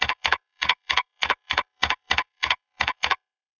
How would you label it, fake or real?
fake